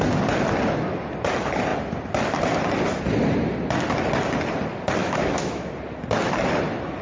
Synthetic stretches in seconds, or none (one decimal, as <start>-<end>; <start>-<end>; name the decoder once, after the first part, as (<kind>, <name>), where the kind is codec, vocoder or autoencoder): 5.0-5.7 (autoencoder, DAC-VAE)